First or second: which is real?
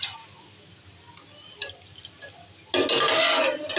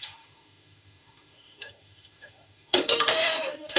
first